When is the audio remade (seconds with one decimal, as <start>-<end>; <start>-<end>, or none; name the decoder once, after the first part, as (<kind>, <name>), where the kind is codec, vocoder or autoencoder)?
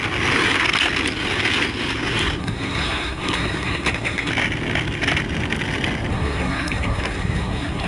2.4-4.3 (codec, SNAC); 6.1-7.9